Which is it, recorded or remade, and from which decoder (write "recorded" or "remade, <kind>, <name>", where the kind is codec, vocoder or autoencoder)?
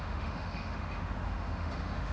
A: remade, autoencoder, DAC-VAE